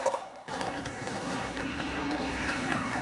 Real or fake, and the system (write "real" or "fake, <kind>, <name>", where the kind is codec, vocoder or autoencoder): fake, codec, SNAC